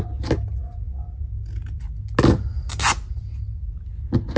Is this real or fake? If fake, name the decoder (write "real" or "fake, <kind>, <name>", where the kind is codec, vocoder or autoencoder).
real